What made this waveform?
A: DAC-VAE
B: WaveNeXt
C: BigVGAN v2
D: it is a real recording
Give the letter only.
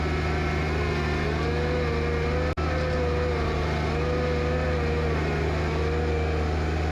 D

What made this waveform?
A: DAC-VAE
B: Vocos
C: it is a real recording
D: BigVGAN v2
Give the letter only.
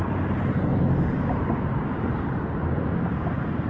C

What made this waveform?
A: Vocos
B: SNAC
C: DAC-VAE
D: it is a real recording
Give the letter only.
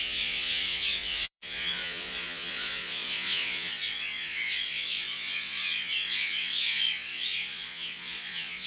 A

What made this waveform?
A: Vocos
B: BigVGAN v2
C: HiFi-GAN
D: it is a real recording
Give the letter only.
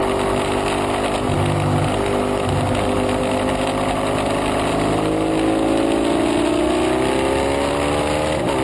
D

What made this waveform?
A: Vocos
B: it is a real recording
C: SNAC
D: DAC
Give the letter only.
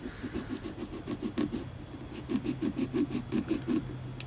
B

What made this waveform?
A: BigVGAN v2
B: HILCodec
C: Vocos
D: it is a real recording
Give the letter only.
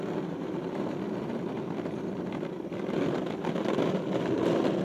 A